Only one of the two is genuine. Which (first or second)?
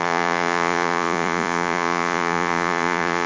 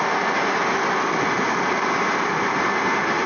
second